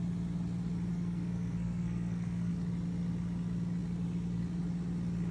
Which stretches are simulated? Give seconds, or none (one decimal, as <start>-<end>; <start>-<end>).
0.9-2.5